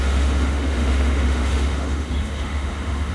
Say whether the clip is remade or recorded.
remade